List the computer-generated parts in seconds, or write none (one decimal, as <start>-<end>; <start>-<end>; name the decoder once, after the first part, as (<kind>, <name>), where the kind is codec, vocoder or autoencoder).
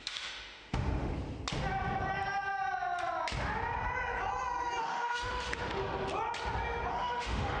0.0-1.1 (autoencoder, DAC-VAE); 4.8-5.8; 6.9-7.6